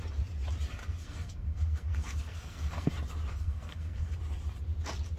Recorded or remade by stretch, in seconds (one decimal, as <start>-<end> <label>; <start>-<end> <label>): 0.0-0.8 recorded; 0.8-2.9 remade; 2.9-3.3 recorded; 3.3-4.1 remade; 4.1-5.2 recorded